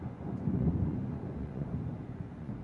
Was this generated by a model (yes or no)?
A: yes